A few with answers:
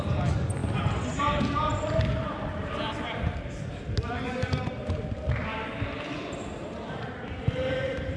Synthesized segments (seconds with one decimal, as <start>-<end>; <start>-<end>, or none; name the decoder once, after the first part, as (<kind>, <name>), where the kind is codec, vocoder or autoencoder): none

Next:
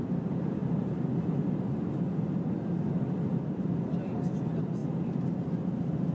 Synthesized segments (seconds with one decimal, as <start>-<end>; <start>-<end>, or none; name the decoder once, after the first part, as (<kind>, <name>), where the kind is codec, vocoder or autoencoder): none

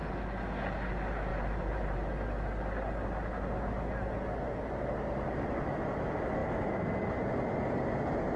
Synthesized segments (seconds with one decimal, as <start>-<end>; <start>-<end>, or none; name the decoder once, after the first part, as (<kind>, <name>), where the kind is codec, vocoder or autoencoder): 1.3-2.1 (vocoder, BigVGAN v2)

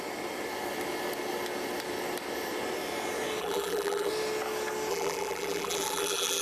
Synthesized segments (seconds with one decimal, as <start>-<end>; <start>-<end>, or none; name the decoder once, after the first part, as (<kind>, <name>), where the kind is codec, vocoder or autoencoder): 3.4-4.1 (vocoder, BigVGAN v2); 4.9-6.4

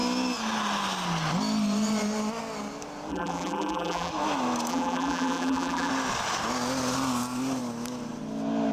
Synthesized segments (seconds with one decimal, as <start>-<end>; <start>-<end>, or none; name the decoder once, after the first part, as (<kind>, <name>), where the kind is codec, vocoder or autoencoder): 3.1-4.1 (vocoder, BigVGAN v2); 4.7-5.9